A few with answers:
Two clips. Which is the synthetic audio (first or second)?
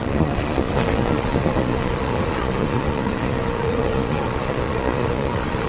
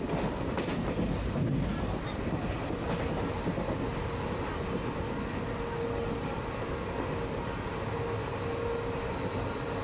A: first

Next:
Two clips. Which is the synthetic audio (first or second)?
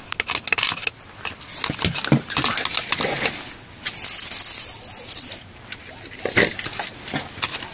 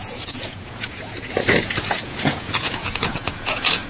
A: second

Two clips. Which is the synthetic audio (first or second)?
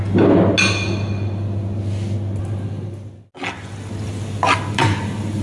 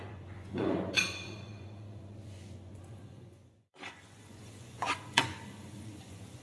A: second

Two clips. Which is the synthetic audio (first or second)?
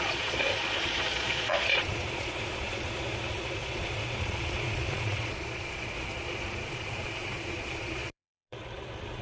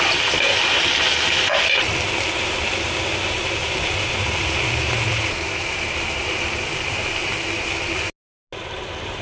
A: first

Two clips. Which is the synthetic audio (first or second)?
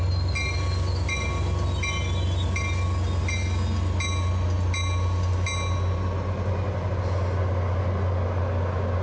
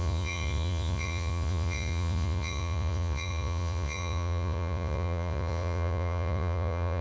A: second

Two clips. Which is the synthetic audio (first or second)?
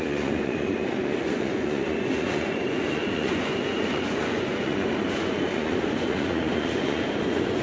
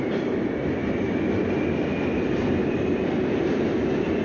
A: first